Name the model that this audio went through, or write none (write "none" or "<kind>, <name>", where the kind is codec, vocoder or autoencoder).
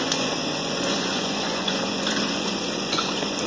vocoder, Vocos